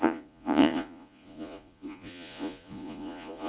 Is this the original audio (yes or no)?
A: no